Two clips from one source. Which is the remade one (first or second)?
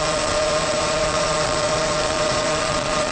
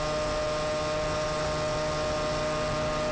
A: first